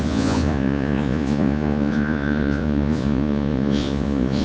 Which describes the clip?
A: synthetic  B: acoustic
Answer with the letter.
A